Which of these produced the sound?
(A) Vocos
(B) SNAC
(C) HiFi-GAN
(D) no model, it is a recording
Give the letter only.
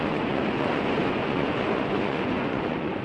A